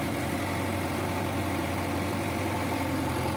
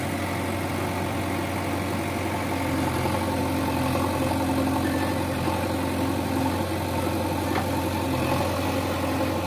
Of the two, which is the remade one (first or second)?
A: first